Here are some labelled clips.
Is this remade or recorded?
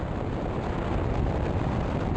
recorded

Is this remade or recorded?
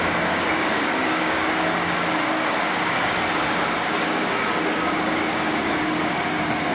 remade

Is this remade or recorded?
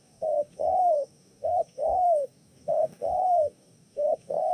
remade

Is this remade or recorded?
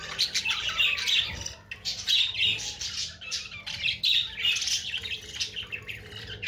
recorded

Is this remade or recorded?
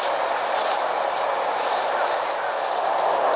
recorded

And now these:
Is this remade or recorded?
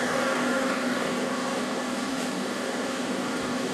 remade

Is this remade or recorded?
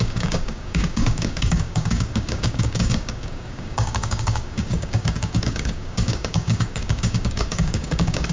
remade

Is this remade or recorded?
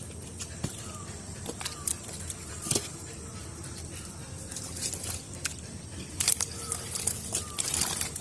recorded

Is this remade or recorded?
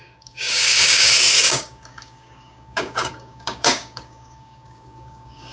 remade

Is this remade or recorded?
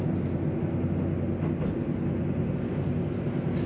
recorded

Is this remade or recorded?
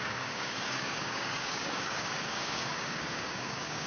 remade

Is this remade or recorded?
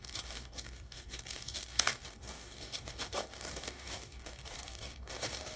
remade